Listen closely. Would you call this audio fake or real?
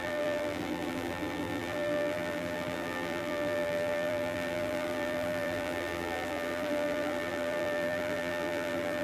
fake